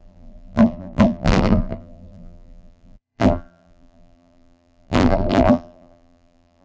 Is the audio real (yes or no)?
no